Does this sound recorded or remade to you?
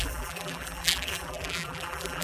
remade